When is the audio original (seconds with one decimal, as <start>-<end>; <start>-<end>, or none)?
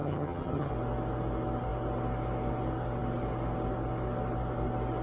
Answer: 0.7-5.0